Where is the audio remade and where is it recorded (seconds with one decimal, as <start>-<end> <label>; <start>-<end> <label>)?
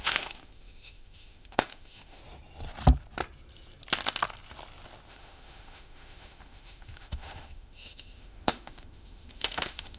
0.0-2.2 remade; 2.2-5.1 recorded; 5.1-10.0 remade